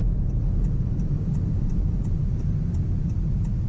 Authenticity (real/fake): real